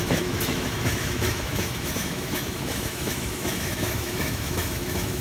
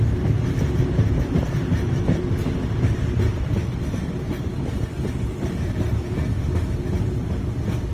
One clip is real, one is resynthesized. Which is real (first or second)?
second